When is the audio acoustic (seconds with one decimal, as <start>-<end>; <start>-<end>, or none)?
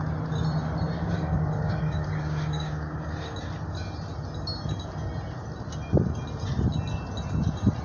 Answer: 0.0-1.0; 3.1-7.8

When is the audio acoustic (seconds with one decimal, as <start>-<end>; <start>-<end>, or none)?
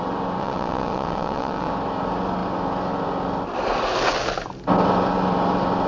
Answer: 0.0-0.4; 1.7-5.9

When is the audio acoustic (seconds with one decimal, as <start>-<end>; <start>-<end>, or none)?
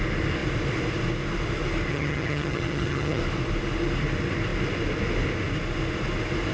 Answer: 0.0-1.9; 3.2-6.5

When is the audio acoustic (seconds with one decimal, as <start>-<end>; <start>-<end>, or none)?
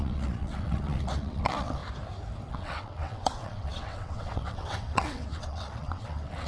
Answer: 1.8-2.5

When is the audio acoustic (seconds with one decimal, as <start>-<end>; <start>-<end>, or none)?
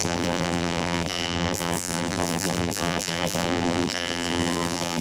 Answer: none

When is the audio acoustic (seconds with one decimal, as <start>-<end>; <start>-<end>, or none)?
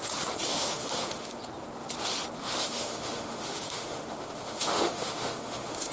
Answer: 0.0-0.5; 1.4-2.4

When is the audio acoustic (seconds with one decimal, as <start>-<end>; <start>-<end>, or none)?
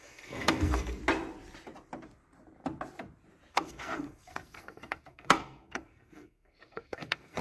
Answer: 1.0-3.5